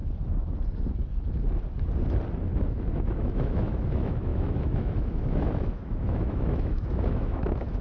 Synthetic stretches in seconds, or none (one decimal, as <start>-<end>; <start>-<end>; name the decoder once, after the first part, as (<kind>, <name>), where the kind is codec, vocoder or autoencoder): 2.6-7.8 (autoencoder, DAC-VAE)